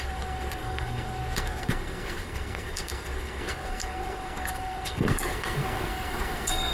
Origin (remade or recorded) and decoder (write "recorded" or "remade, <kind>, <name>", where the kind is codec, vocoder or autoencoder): remade, codec, SNAC